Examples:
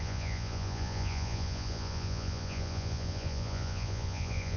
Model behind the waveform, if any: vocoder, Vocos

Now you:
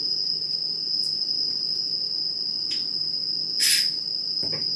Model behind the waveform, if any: none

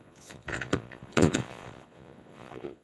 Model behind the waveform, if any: vocoder, Vocos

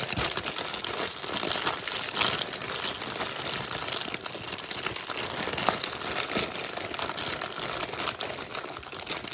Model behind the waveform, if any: none